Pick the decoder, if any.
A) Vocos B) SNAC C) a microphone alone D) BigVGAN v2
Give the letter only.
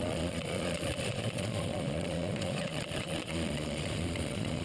A